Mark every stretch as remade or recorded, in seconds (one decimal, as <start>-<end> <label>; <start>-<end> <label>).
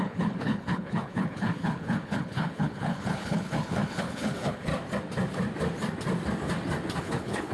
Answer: 0.0-4.7 remade; 4.7-7.0 recorded; 7.0-7.5 remade